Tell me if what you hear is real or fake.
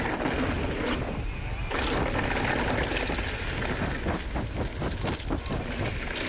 real